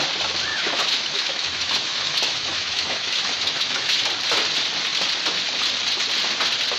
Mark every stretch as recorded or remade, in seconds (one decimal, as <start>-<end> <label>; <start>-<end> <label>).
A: 0.0-0.5 recorded; 0.5-4.1 remade; 4.1-6.8 recorded